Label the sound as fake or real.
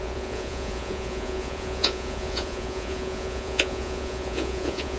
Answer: fake